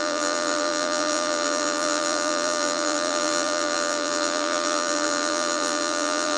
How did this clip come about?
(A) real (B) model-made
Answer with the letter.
B